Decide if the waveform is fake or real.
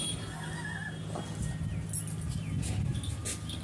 real